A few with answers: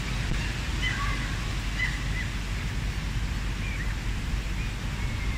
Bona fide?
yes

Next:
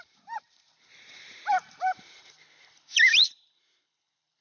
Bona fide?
no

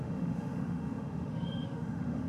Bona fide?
no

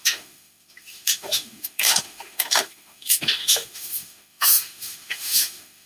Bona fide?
no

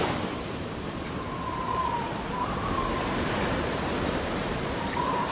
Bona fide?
no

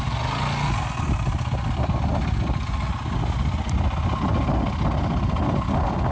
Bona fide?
yes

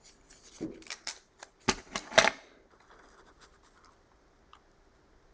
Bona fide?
yes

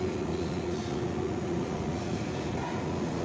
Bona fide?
no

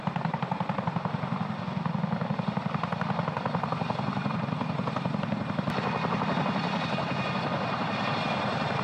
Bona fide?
yes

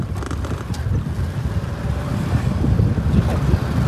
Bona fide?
yes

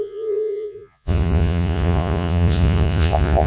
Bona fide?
no